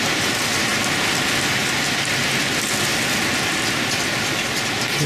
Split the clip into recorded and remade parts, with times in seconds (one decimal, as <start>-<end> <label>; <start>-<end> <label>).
0.0-5.1 recorded